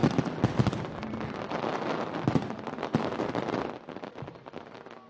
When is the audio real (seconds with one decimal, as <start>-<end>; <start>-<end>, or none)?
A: 0.0-5.1